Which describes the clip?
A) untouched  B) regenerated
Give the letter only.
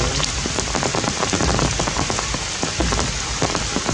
A